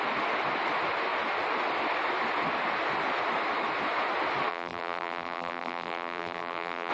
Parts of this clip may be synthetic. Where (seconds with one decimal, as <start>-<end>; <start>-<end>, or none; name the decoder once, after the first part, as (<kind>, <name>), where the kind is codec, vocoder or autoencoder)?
4.5-6.9 (vocoder, BigVGAN v2)